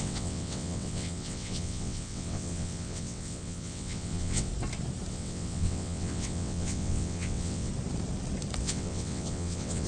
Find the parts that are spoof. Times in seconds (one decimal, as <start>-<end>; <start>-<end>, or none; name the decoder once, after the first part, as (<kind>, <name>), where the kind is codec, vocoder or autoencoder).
0.0-4.5 (vocoder, WaveNeXt); 5.1-7.7; 8.6-9.9